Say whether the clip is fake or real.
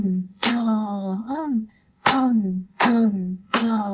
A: fake